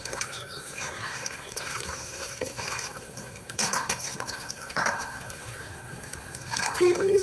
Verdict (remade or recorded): remade